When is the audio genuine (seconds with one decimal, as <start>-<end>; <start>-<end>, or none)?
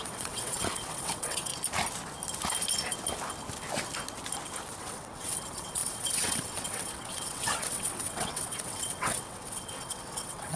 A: 1.5-4.8